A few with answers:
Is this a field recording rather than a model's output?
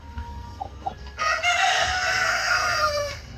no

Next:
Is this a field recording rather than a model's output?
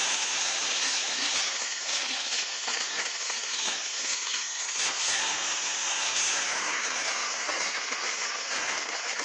no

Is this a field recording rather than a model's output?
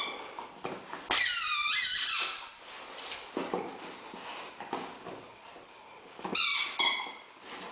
yes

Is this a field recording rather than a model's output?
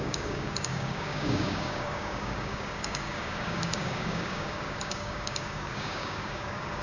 no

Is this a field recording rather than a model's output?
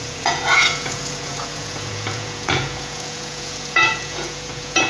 no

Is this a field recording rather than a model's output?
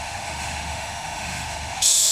no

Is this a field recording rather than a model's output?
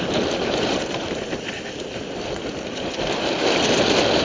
no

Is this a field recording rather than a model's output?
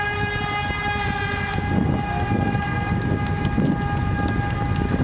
yes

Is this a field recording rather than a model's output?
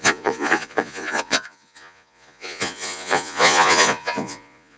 no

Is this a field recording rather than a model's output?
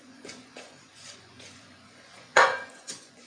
no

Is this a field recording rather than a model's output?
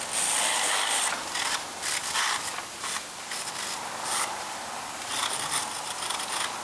yes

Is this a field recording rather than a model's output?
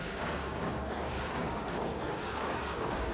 no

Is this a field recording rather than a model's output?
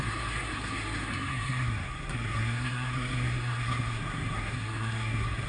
no